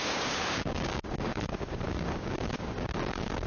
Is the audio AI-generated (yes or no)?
yes